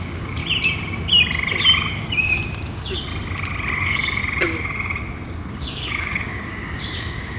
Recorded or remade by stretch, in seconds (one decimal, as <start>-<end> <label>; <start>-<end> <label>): 0.0-0.4 remade; 0.4-1.9 recorded; 1.9-3.1 remade; 3.1-3.8 recorded; 3.8-4.2 remade; 4.2-5.6 recorded; 5.6-7.4 remade

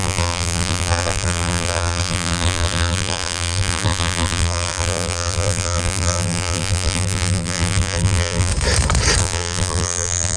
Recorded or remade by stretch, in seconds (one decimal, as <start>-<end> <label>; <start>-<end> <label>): 0.0-8.5 remade; 8.5-9.2 recorded; 9.2-10.4 remade

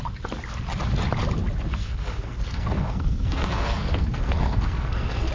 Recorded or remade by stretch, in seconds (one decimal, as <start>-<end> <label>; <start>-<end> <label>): 0.0-1.8 recorded; 1.8-5.3 remade

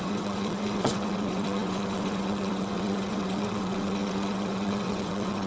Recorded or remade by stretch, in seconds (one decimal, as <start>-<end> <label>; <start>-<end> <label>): 0.0-5.5 remade

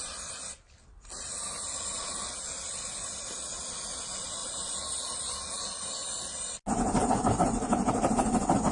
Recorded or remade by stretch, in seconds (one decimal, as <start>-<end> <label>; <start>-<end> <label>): 0.0-8.7 recorded

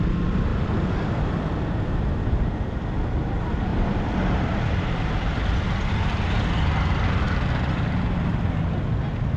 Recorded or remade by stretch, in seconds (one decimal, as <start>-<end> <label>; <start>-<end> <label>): 0.0-0.5 recorded; 0.5-2.6 remade; 2.6-3.7 recorded; 3.7-8.4 remade; 8.4-9.4 recorded